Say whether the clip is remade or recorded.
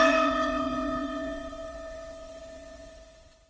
remade